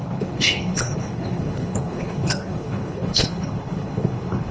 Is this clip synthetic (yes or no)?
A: yes